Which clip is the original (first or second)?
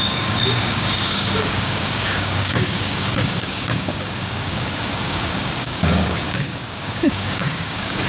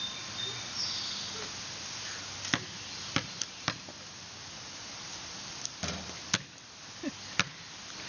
second